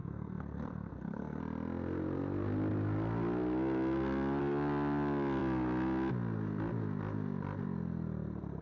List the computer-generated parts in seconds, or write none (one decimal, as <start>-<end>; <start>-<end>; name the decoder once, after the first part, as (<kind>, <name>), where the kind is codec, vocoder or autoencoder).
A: 0.0-1.4 (codec, SNAC)